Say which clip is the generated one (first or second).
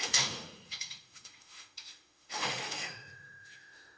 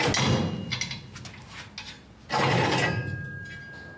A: first